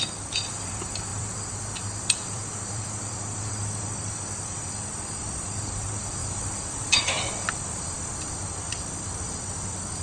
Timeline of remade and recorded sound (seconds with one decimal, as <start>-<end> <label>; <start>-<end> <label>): 0.0-1.1 recorded; 1.1-3.5 remade; 3.5-6.2 recorded; 6.2-9.4 remade; 9.4-10.0 recorded